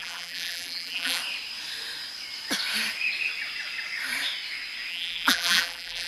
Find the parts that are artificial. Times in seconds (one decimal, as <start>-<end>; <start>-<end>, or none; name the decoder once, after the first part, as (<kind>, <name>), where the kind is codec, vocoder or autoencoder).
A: 0.0-1.2 (vocoder, BigVGAN v2); 4.9-6.1